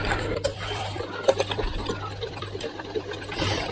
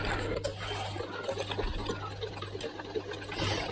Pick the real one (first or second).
second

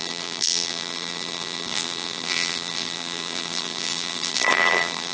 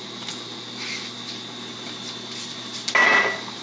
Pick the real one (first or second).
second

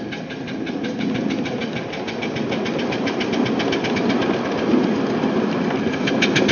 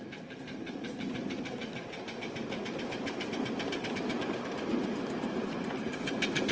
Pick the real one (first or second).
first